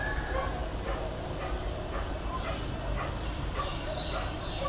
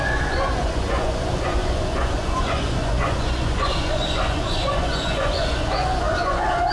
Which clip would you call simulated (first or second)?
second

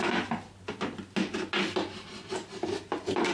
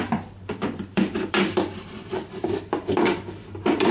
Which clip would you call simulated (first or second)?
second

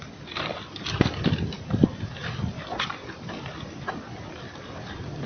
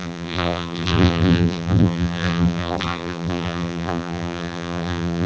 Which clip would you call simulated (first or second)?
second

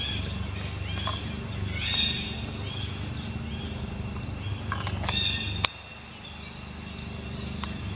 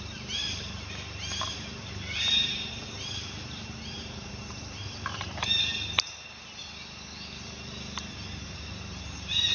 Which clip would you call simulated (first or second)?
second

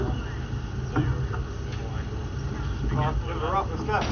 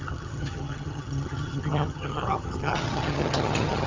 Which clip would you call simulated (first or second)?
second